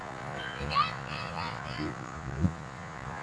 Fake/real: fake